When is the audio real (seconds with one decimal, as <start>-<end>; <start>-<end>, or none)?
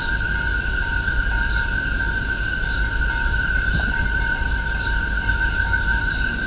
0.0-6.5